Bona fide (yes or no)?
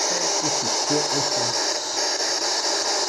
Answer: yes